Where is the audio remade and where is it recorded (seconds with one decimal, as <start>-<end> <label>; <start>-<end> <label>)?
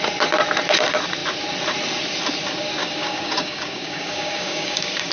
0.0-2.8 recorded; 2.8-5.1 remade